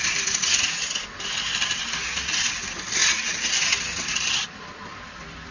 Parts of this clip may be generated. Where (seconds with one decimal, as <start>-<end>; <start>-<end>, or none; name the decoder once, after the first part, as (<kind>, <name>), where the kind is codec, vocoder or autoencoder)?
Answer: none